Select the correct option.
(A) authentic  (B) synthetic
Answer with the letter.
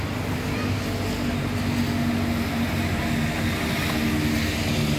A